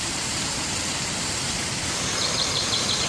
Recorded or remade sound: remade